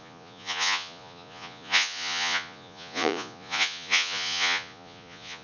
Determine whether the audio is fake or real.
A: fake